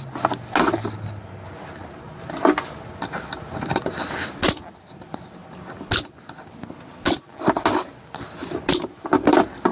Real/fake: real